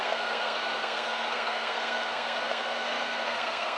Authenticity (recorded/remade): remade